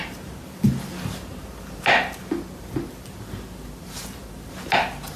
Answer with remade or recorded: recorded